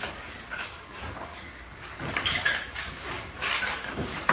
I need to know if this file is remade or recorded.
remade